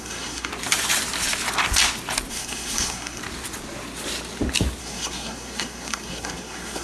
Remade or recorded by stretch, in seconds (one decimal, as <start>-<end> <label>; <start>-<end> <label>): 0.0-0.5 remade; 0.5-2.3 recorded; 2.3-3.2 remade; 3.2-4.8 recorded; 4.8-6.8 remade